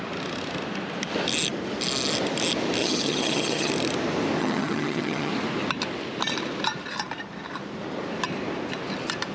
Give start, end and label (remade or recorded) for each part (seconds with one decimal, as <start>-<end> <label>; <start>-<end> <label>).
0.0-2.8 recorded; 2.8-3.7 remade; 3.7-4.4 recorded; 4.4-5.3 remade; 5.3-9.3 recorded